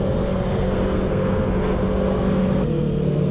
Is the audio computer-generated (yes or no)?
yes